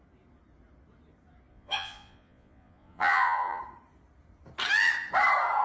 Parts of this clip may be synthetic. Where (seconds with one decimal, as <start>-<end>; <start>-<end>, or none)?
1.5-3.6